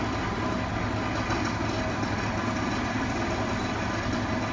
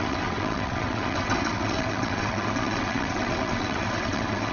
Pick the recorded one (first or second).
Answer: first